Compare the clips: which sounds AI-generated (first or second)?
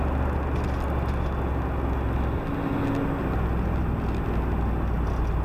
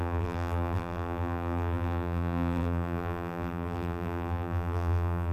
second